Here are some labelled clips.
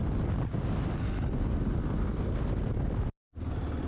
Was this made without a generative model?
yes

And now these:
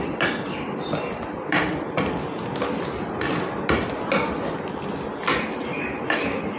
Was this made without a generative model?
yes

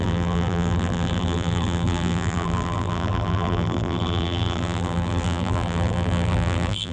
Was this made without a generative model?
no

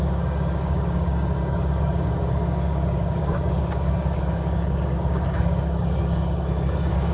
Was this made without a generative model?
no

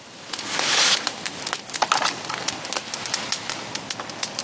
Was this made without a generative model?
yes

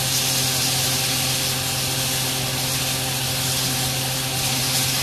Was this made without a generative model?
yes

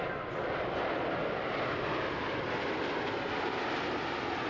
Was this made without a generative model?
yes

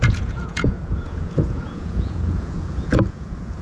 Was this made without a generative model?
no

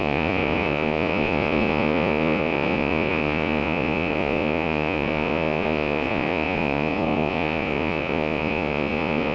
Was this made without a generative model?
no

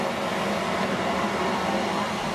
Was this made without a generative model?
yes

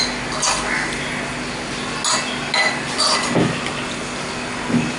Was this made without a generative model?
yes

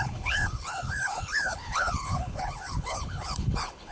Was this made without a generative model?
no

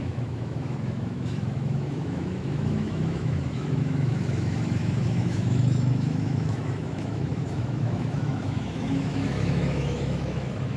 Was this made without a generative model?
no